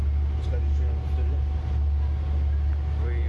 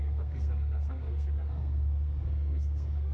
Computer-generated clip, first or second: second